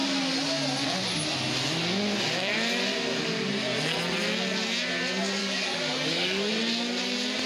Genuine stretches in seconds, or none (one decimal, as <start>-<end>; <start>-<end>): 0.0-5.4; 6.5-7.5